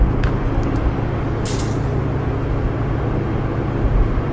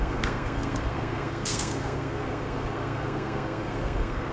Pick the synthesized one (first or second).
second